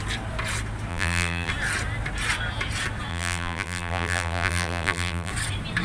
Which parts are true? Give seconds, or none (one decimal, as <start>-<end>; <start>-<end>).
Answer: 0.0-0.9; 1.5-3.1; 5.3-5.8